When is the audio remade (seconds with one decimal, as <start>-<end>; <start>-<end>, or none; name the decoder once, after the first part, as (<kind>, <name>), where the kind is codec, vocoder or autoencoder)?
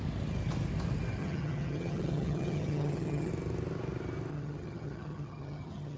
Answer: 1.2-3.3 (vocoder, HiFi-GAN); 4.3-6.0